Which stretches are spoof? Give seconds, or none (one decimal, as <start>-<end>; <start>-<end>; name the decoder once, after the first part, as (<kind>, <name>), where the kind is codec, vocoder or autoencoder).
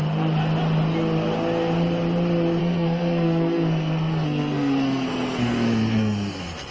2.6-6.7 (codec, SNAC)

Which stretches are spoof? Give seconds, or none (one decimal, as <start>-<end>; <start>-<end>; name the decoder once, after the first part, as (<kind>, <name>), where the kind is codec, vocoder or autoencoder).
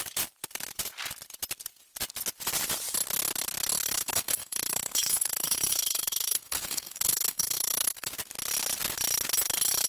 3.8-8.1 (codec, SNAC)